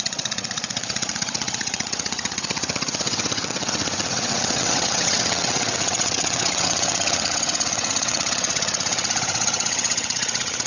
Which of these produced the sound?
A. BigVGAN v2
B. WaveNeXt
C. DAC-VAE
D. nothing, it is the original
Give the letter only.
B